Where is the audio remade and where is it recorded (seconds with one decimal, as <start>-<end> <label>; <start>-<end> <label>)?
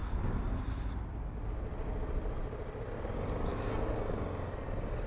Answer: 0.0-5.1 recorded